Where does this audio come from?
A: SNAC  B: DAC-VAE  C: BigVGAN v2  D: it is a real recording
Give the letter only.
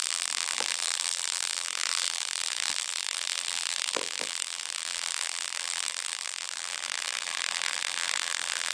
C